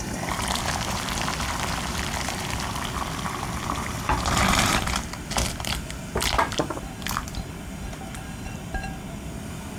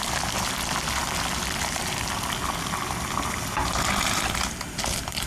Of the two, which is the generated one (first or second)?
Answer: first